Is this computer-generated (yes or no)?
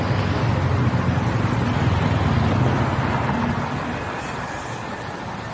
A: no